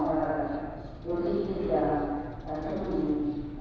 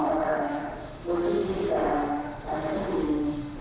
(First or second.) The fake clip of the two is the second